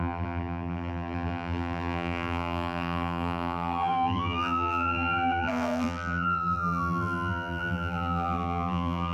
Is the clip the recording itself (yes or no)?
no